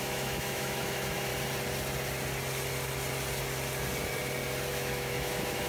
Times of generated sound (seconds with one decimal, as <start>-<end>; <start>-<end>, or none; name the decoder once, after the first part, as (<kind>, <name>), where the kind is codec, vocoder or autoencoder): 0.0-1.3 (autoencoder, DAC-VAE); 4.7-5.7